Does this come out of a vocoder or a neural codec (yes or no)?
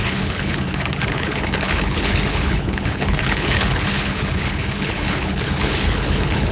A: yes